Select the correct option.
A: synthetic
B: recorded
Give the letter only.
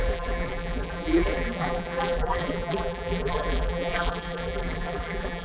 A